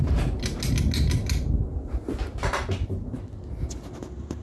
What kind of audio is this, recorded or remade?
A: recorded